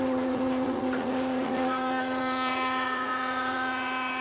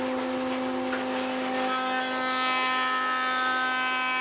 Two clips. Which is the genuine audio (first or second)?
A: second